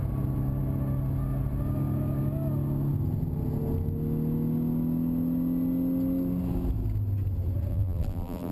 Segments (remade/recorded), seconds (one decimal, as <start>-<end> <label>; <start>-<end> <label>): 0.0-7.7 recorded; 7.7-8.5 remade